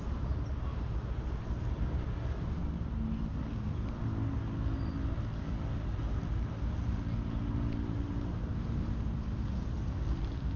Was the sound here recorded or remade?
recorded